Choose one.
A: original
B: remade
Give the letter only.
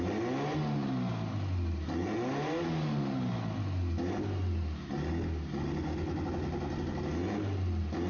A